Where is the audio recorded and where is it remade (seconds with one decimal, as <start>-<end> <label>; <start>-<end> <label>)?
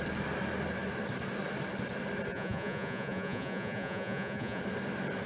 0.0-2.3 recorded; 2.3-4.6 remade; 4.6-5.3 recorded